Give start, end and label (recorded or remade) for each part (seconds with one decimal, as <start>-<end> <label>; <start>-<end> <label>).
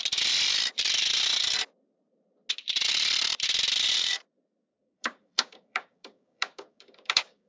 0.0-4.7 recorded; 4.7-7.5 remade